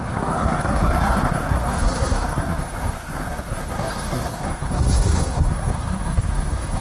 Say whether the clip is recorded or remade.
remade